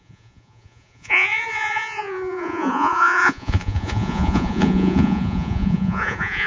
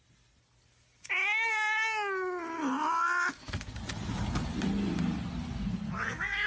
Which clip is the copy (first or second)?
first